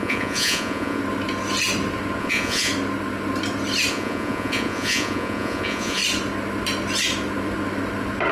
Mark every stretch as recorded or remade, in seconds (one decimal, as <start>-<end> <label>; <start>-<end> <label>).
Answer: 0.0-1.0 remade; 1.0-2.2 recorded; 2.2-2.7 remade; 2.7-3.9 recorded; 3.9-6.0 remade; 6.0-8.3 recorded